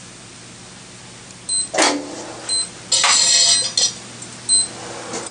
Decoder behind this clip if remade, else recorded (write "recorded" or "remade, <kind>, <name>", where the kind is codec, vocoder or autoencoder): recorded